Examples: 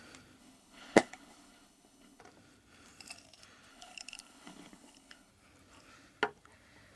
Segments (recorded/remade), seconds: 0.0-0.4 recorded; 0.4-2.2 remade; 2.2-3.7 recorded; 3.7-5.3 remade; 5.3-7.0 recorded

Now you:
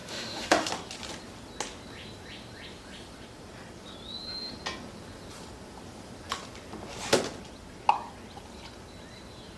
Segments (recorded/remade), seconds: 0.0-0.7 remade; 0.7-9.6 recorded

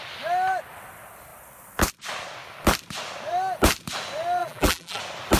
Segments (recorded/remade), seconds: 0.0-4.4 recorded; 4.4-5.0 remade; 5.0-5.4 recorded

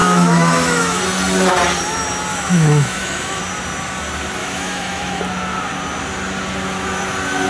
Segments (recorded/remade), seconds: 0.0-1.0 remade; 1.0-2.3 recorded; 2.3-3.4 remade; 3.4-4.4 recorded; 4.4-5.2 remade; 5.2-7.5 recorded

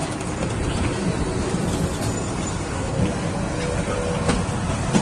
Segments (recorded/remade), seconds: 0.0-2.5 recorded; 2.5-3.0 remade; 3.0-5.0 recorded

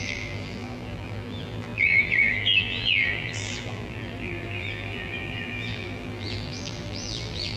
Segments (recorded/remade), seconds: 0.0-7.6 remade

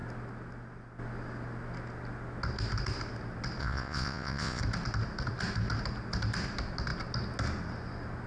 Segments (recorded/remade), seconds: 0.0-3.6 recorded; 3.6-4.6 remade; 4.6-8.3 recorded

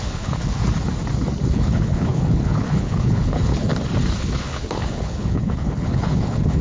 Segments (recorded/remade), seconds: 0.0-0.6 remade; 0.6-1.5 recorded; 1.5-3.7 remade; 3.7-4.2 recorded; 4.2-6.6 remade